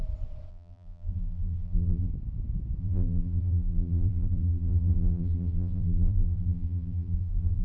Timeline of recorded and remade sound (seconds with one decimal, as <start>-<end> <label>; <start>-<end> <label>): 0.0-0.5 recorded; 0.5-2.1 remade; 2.1-2.8 recorded; 2.8-7.6 remade